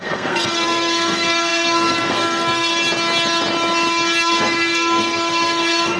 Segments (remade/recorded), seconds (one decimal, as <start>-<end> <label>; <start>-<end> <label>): 0.0-2.7 remade; 2.7-4.3 recorded; 4.3-6.0 remade